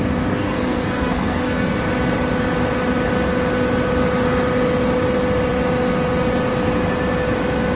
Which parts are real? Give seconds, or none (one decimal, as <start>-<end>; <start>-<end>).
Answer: 0.0-0.4; 1.7-7.8